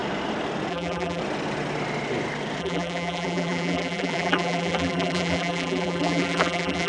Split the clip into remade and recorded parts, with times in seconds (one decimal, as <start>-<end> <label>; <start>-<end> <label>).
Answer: 0.0-0.7 recorded; 0.7-1.2 remade; 1.2-2.6 recorded; 2.6-6.9 remade